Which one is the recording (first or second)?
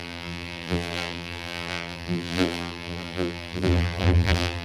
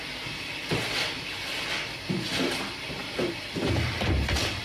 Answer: second